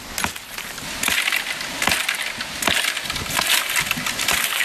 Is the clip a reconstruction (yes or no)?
no